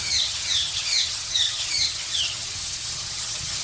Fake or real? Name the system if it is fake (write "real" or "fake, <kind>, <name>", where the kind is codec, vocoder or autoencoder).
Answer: fake, vocoder, HiFi-GAN